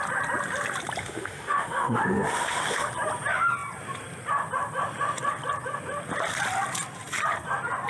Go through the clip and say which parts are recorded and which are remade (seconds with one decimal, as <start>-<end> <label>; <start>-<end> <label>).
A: 0.0-1.0 recorded; 1.0-2.9 remade; 2.9-7.9 recorded